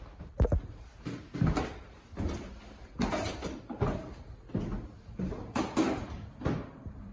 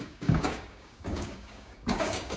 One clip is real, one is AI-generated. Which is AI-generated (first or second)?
second